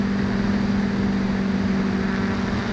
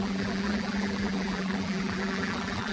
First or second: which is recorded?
first